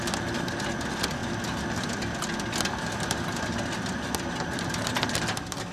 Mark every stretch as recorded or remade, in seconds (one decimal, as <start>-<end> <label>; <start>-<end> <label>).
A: 0.0-5.7 recorded